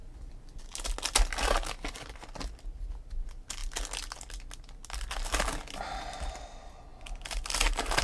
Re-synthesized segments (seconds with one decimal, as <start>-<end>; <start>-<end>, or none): none